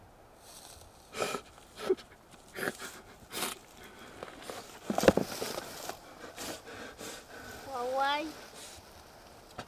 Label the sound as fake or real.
real